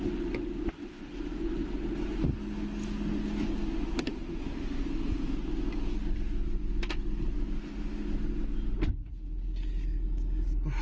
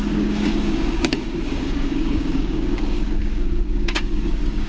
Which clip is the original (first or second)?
first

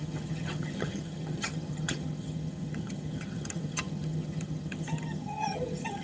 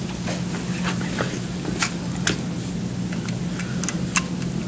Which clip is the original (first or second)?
second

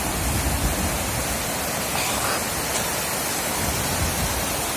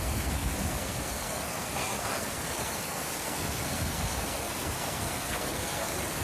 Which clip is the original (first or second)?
first